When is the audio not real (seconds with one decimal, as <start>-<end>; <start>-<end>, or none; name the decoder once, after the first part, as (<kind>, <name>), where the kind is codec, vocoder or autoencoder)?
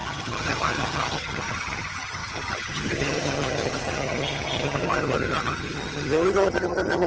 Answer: 0.0-7.1 (vocoder, HiFi-GAN)